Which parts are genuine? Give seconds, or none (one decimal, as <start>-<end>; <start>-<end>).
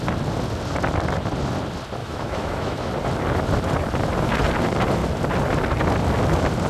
0.0-2.0; 2.9-6.7